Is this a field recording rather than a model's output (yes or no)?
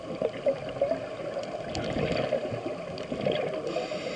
yes